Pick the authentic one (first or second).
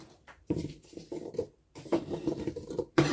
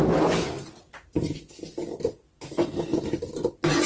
second